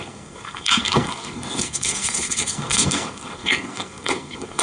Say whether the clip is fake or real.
fake